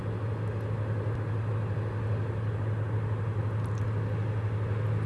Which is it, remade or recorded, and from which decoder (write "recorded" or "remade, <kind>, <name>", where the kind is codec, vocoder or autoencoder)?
recorded